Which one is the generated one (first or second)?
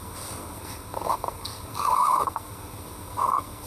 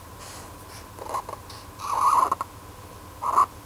first